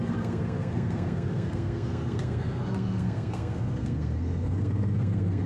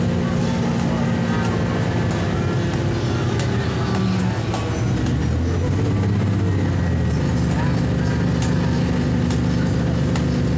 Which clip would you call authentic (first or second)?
second